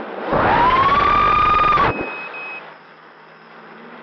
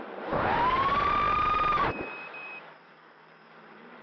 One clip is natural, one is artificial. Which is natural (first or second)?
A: first